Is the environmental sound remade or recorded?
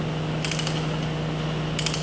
recorded